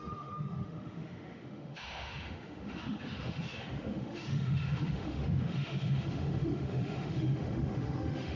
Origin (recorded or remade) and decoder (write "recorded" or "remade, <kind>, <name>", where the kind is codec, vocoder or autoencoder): remade, autoencoder, DAC-VAE